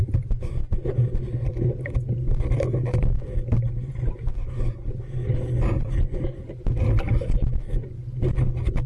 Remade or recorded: recorded